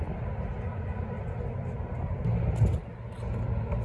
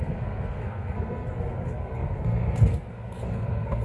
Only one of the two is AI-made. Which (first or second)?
second